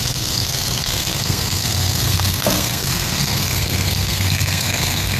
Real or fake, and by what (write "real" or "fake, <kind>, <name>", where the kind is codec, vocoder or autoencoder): fake, codec, SNAC